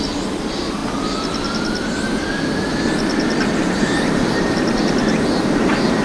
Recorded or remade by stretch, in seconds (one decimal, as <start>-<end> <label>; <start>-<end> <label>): 0.0-2.7 recorded; 2.7-5.0 remade; 5.0-6.0 recorded